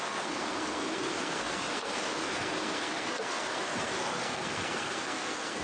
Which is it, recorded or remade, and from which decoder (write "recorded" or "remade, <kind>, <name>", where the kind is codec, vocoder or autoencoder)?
remade, codec, SNAC